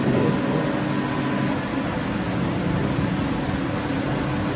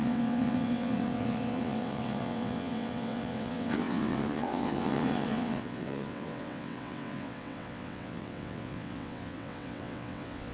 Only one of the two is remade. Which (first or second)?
second